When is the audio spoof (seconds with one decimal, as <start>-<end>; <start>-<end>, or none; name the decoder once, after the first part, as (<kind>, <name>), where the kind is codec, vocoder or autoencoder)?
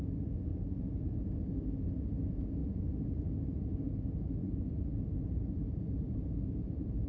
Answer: 0.5-1.3 (vocoder, BigVGAN v2); 2.6-3.7; 4.4-7.1